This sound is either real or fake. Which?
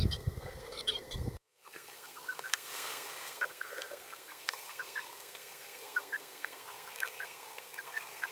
fake